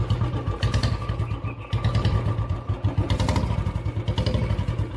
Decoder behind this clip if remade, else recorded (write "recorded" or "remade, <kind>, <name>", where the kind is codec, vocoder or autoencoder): recorded